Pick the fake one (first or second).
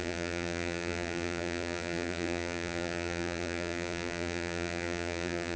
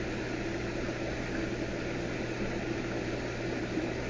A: first